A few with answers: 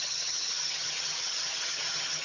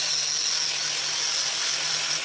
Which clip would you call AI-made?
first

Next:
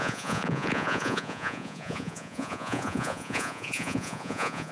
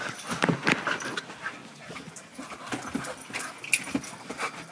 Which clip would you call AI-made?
first